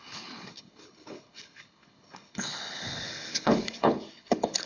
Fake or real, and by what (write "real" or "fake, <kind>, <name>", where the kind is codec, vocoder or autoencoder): fake, codec, HILCodec